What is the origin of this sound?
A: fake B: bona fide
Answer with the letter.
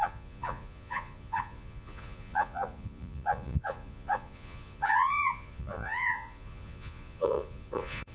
A